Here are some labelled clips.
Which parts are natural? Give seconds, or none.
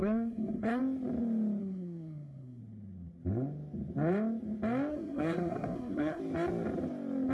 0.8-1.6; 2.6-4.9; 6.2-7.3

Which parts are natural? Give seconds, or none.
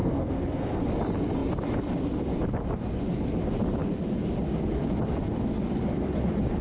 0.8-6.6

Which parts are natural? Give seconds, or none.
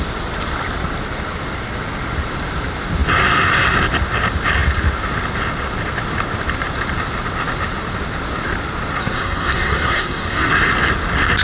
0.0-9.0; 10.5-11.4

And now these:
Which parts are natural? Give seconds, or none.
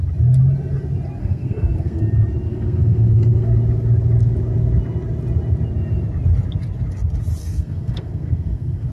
0.0-1.2; 2.0-2.5; 3.6-7.4